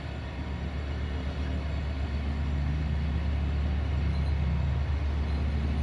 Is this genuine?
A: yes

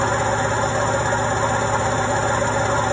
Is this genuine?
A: yes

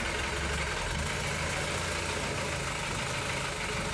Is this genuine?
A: yes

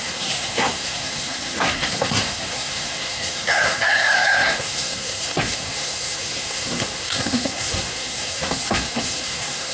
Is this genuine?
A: no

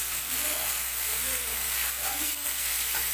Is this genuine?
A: no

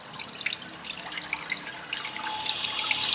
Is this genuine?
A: yes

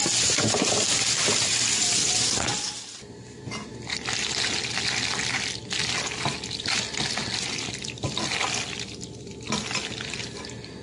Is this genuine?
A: yes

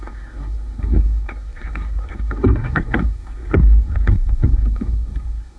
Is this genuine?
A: no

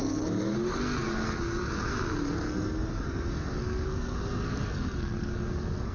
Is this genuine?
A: no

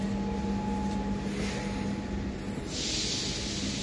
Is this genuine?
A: yes